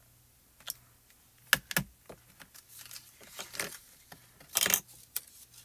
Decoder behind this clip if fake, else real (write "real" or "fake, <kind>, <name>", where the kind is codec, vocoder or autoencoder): real